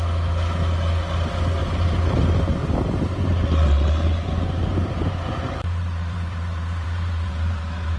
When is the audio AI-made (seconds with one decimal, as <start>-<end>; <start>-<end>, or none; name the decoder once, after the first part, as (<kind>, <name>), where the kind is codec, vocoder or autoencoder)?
1.6-2.2 (vocoder, BigVGAN v2); 2.6-3.3; 4.7-8.0

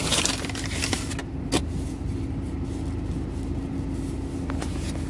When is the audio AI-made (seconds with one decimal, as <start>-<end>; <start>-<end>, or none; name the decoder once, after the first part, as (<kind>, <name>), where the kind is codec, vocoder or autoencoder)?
none

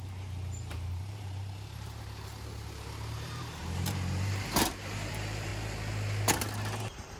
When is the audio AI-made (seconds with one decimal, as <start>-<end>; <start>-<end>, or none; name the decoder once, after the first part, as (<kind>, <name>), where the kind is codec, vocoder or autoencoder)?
0.0-5.5 (vocoder, BigVGAN v2); 6.8-7.2

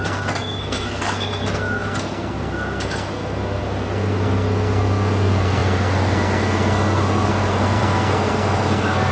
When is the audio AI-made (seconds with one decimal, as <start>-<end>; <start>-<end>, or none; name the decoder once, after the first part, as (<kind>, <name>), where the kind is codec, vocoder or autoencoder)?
0.0-9.1 (codec, SNAC)

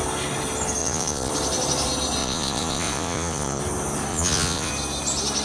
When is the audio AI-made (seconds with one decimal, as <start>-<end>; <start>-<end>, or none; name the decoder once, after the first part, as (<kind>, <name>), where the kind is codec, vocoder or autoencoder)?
0.8-1.3 (vocoder, Vocos); 2.2-3.6; 4.1-4.7

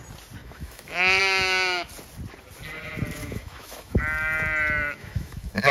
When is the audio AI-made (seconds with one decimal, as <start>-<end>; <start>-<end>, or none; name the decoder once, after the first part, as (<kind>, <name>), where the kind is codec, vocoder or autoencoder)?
0.4-1.2 (autoencoder, DAC-VAE); 3.2-4.0; 5.0-5.7